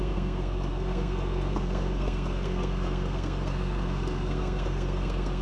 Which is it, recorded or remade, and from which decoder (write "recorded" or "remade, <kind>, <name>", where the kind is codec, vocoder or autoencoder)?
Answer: remade, codec, SNAC